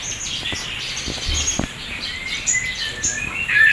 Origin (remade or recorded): recorded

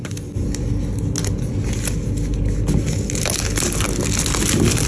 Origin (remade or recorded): recorded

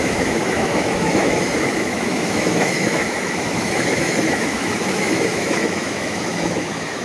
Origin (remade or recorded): remade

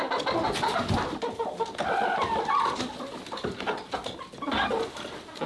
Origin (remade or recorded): recorded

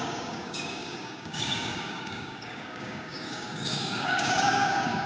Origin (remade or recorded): remade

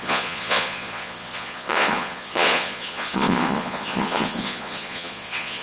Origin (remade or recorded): remade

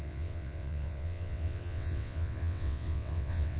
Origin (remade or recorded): remade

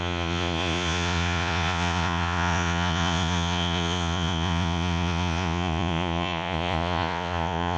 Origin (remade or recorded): remade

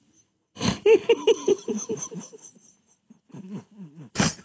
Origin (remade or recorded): recorded